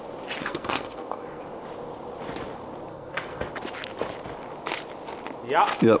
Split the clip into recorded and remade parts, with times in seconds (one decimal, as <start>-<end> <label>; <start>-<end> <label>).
0.0-0.4 recorded; 0.4-1.4 remade; 1.4-2.9 recorded; 2.9-3.5 remade; 3.5-6.0 recorded